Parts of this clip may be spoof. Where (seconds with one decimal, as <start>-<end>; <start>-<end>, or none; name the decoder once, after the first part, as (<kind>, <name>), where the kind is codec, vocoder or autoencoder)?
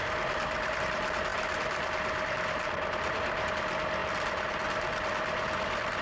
0.0-0.8 (vocoder, BigVGAN v2); 1.3-3.5; 4.0-6.0